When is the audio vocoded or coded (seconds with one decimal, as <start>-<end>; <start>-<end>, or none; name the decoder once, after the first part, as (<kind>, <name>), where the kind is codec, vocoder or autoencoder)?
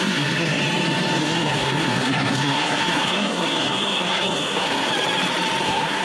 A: 0.0-0.6 (codec, SNAC); 1.2-4.9; 5.6-6.0